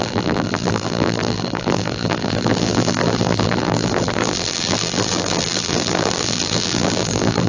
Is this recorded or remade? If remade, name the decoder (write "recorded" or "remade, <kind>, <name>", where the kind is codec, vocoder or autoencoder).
remade, vocoder, BigVGAN v2